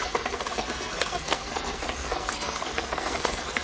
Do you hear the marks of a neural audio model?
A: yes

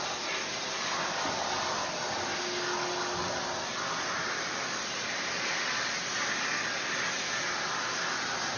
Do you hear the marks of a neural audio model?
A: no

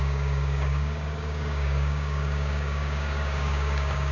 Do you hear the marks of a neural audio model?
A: yes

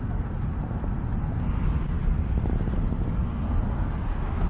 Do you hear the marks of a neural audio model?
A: no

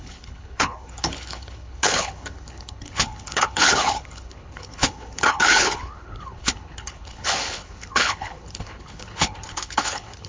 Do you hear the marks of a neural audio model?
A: yes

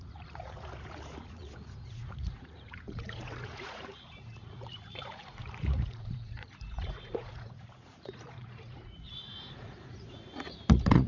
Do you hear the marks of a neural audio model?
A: yes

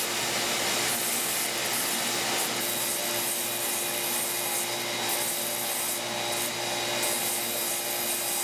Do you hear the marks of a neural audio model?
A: no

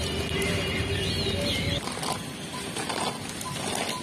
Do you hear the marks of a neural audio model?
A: no